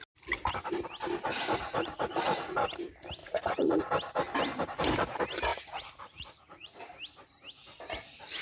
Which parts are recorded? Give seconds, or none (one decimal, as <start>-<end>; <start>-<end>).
0.0-1.3; 2.6-3.2; 3.9-5.5; 6.8-8.4